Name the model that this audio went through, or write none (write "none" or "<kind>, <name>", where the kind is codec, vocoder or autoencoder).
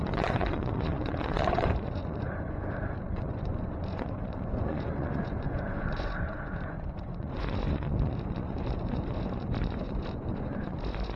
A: vocoder, Vocos